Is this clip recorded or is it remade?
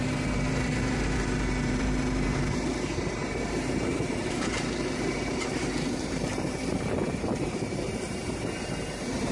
remade